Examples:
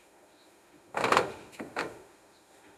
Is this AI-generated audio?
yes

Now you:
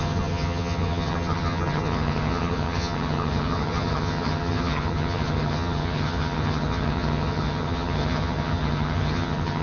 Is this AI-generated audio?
yes